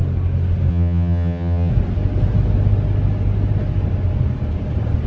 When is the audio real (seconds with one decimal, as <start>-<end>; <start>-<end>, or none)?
0.0-0.7; 1.7-5.1